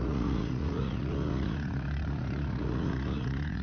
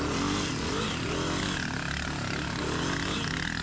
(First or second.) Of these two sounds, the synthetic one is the first